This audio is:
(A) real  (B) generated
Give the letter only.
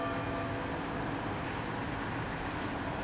A